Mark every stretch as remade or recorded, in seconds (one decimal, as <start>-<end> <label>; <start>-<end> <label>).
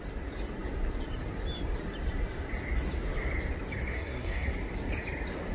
0.0-3.9 recorded; 3.9-4.5 remade; 4.5-5.5 recorded